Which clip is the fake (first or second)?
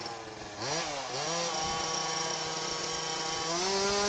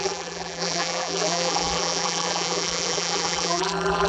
second